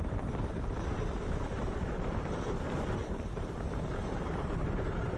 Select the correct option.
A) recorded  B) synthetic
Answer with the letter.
B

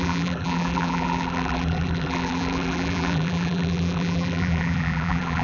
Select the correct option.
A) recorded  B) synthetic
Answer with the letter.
B